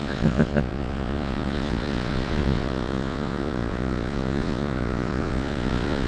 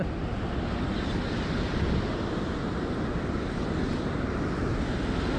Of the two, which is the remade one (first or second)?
first